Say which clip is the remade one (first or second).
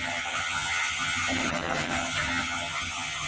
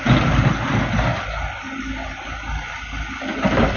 first